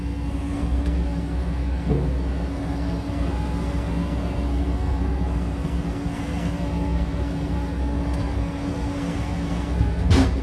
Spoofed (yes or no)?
yes